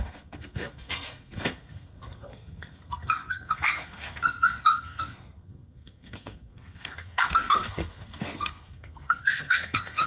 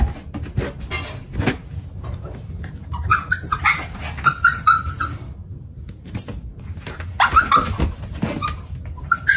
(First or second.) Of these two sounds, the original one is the second